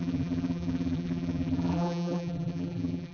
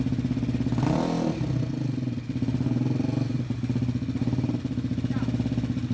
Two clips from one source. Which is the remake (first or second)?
first